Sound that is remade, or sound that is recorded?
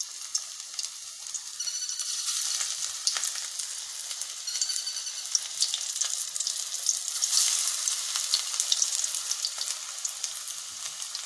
recorded